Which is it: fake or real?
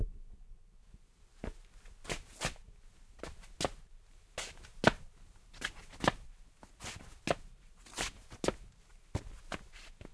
real